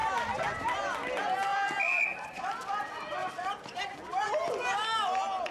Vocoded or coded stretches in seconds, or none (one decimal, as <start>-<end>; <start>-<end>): none